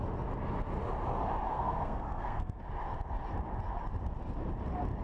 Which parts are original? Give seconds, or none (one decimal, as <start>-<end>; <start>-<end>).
0.0-1.5; 2.6-5.0